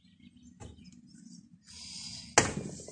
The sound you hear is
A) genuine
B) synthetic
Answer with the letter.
A